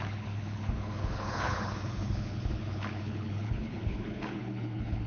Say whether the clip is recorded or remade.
remade